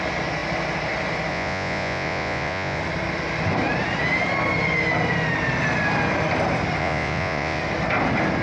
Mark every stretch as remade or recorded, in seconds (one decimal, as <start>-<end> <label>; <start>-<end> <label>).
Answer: 0.0-1.3 recorded; 1.3-2.8 remade; 2.8-6.8 recorded; 6.8-7.6 remade; 7.6-8.4 recorded

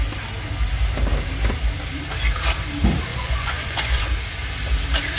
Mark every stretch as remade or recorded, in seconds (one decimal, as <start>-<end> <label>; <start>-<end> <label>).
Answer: 0.0-3.1 recorded; 3.1-4.0 remade; 4.0-5.2 recorded